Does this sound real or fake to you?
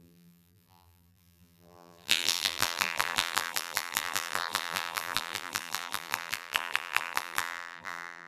fake